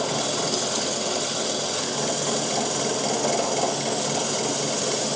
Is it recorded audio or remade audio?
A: recorded